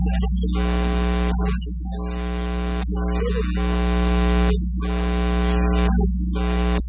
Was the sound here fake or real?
real